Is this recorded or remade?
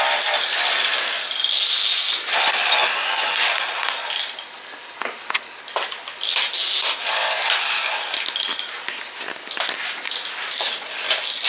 recorded